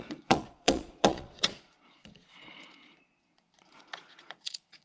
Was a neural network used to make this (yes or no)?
yes